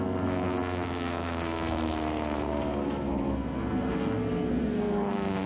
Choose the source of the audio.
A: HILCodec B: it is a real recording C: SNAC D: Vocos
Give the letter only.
C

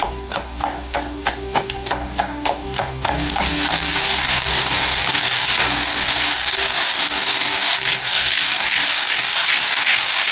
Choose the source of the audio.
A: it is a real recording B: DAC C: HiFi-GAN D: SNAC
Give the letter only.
B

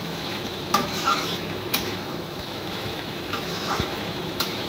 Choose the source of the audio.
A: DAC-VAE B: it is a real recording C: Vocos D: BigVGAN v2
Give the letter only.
A